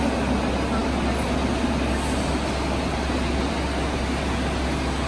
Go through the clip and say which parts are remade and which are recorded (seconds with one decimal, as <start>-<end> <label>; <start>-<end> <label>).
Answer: 0.0-5.1 recorded